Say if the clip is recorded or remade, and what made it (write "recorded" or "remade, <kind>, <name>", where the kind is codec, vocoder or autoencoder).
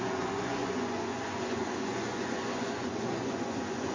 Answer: remade, vocoder, Vocos